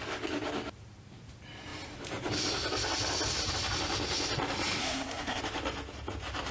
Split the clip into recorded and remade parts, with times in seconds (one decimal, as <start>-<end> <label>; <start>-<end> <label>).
0.0-4.8 recorded; 4.8-5.4 remade; 5.4-6.5 recorded